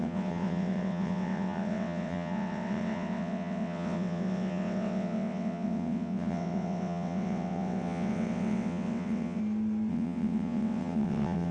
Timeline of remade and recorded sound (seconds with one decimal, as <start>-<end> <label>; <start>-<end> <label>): 0.0-9.4 remade; 9.4-9.9 recorded; 9.9-11.5 remade